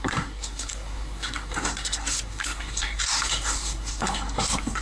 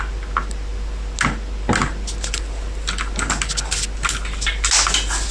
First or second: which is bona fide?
second